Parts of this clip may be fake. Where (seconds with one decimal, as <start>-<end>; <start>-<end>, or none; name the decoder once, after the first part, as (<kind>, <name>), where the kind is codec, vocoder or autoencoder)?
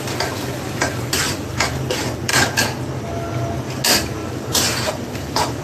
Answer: 4.2-5.6 (vocoder, BigVGAN v2)